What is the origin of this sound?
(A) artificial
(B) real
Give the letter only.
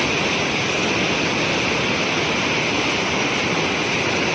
B